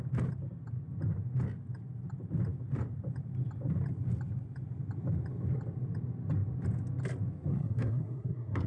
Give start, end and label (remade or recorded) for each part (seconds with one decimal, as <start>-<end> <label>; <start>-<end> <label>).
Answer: 0.0-7.5 recorded; 7.5-8.7 remade

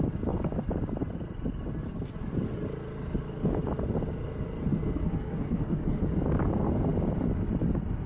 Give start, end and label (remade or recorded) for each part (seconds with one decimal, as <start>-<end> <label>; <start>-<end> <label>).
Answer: 0.0-4.7 recorded; 4.7-6.0 remade; 6.0-8.1 recorded

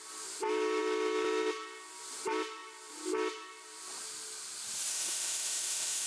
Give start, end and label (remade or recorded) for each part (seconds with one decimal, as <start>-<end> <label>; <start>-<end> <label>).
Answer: 0.0-4.9 recorded; 4.9-6.1 remade

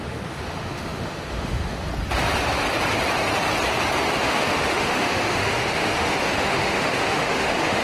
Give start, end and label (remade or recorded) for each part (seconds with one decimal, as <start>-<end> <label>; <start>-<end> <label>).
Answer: 0.0-1.9 remade; 1.9-4.1 recorded; 4.1-7.8 remade

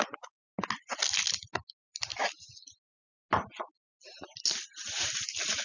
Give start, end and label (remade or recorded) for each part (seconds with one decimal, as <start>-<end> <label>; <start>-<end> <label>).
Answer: 0.0-5.6 recorded